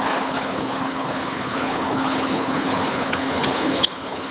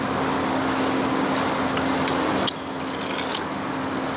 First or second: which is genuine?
second